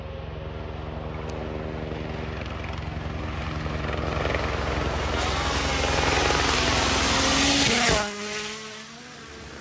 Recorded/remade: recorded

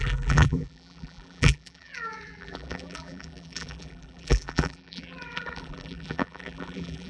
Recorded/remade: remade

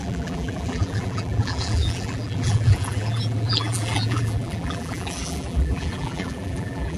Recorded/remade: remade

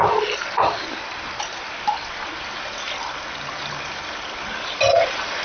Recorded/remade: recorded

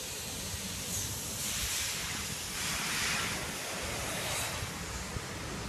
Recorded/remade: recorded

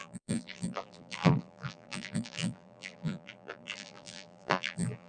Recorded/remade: remade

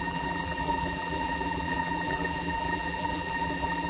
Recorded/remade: remade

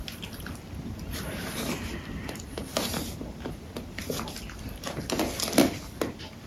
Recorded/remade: remade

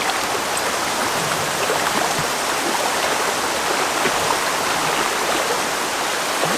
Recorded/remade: recorded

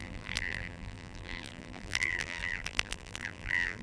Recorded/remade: remade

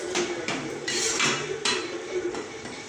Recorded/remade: remade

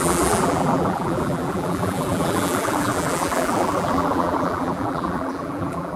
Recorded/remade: remade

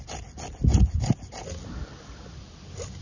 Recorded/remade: recorded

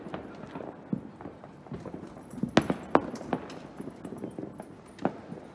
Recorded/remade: recorded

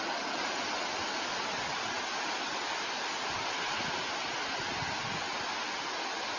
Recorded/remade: recorded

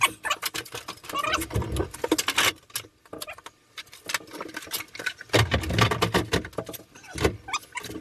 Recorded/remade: recorded